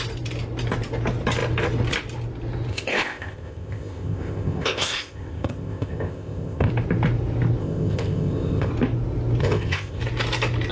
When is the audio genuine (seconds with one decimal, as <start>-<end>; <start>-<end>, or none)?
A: 0.0-2.7; 6.7-7.6; 8.7-9.4; 10.0-10.7